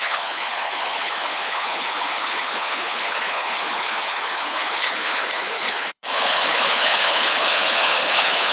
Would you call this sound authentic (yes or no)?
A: no